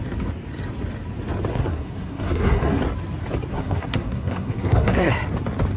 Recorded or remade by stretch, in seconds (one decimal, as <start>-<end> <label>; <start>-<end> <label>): 0.0-1.5 recorded; 1.5-2.8 remade; 2.8-3.5 recorded; 3.5-5.2 remade; 5.2-5.8 recorded